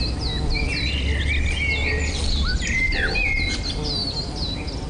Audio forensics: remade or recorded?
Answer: recorded